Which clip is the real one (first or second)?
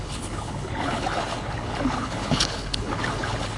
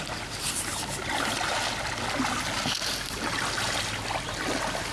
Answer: second